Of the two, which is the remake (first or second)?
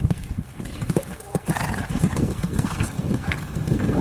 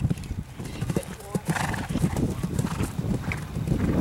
first